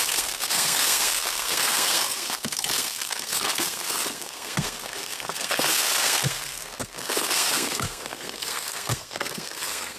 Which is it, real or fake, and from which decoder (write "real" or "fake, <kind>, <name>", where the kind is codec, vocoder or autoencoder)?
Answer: fake, codec, SNAC